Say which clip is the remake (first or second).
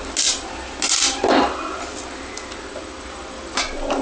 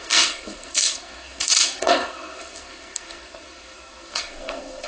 second